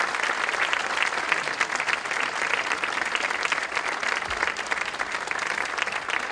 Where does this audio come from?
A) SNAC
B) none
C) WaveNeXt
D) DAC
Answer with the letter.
B